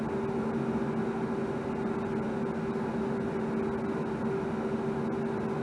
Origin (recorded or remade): recorded